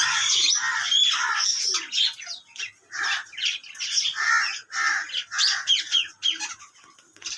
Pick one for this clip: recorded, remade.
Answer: recorded